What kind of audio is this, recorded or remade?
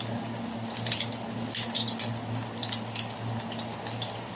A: recorded